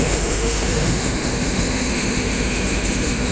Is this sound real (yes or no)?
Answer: no